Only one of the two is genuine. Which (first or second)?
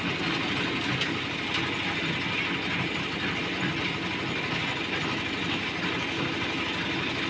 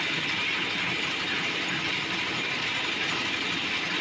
first